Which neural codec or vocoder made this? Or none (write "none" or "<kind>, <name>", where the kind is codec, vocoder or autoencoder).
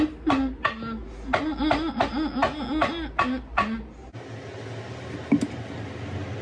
none